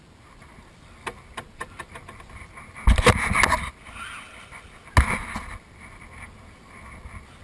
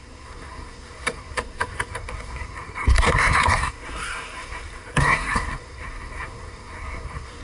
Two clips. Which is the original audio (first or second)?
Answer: first